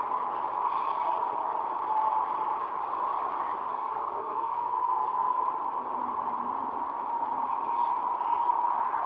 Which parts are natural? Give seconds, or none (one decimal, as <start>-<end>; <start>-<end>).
0.0-3.7; 5.4-9.1